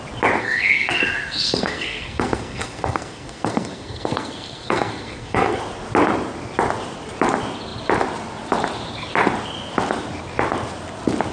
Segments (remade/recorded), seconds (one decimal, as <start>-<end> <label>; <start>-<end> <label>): 0.0-0.4 recorded; 0.4-5.6 remade; 5.6-11.3 recorded